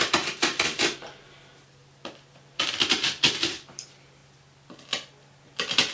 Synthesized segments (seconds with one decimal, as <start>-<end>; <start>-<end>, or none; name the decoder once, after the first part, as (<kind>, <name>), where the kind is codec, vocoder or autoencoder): 0.0-4.2 (vocoder, BigVGAN v2)